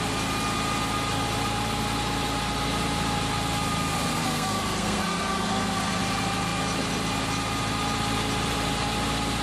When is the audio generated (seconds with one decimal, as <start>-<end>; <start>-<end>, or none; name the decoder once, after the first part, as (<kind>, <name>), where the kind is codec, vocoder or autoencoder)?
4.1-6.0 (codec, SNAC)